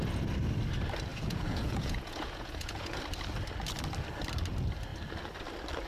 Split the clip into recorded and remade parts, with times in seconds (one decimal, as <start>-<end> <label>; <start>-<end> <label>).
0.0-1.1 recorded; 1.1-3.0 remade; 3.0-5.9 recorded